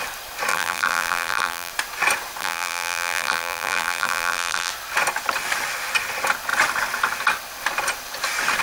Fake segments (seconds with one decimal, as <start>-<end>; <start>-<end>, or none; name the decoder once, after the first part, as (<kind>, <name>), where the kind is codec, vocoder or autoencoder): 0.5-1.7 (vocoder, BigVGAN v2); 2.4-4.7